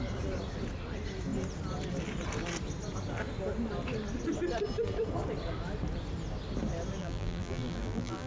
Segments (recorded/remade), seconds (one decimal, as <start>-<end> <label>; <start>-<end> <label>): 0.0-7.0 recorded; 7.0-8.3 remade